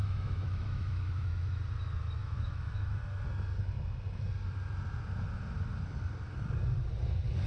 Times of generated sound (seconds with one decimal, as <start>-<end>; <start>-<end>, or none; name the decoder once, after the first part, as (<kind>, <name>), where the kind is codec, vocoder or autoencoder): 0.0-1.6 (autoencoder, DAC-VAE); 2.2-3.0